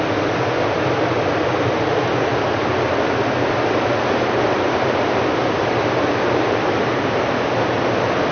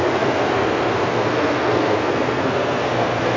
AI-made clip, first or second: second